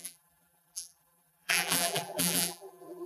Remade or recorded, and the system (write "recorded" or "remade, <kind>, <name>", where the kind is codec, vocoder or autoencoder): remade, vocoder, BigVGAN v2